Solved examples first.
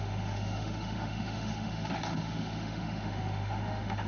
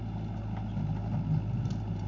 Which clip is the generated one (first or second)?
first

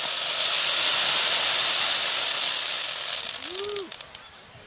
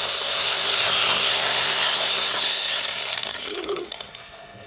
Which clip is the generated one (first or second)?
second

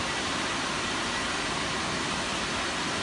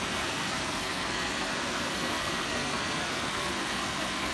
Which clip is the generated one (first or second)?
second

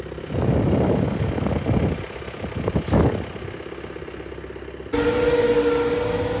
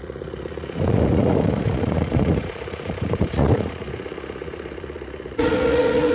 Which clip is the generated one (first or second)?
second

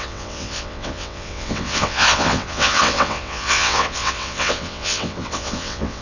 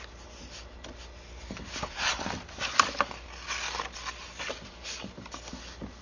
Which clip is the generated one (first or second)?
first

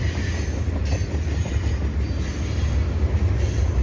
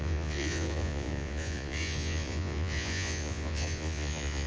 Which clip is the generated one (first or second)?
second